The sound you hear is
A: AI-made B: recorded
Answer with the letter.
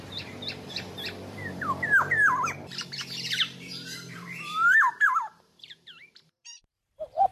A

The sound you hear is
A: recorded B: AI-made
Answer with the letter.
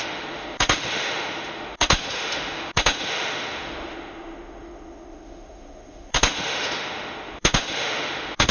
B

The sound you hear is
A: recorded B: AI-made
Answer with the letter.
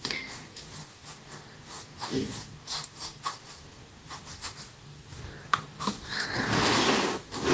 B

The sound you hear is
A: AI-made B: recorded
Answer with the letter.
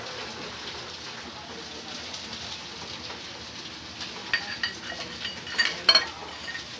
B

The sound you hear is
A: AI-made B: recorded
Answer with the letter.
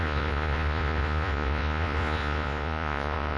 A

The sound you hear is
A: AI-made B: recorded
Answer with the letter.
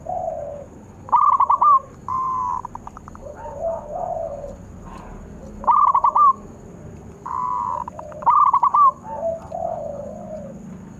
B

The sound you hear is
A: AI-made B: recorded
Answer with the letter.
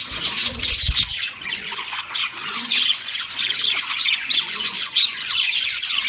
A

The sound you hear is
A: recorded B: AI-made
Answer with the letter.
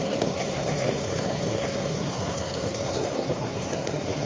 B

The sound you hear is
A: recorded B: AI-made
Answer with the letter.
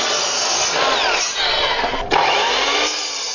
A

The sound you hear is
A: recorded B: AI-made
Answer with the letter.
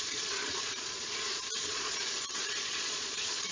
B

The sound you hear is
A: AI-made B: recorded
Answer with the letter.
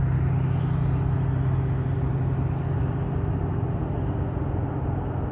B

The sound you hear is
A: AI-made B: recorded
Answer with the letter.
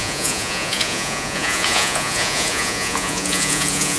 A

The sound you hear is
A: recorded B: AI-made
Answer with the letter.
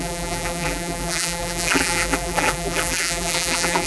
B